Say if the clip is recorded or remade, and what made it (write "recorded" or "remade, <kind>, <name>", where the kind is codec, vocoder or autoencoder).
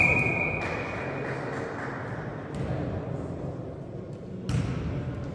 recorded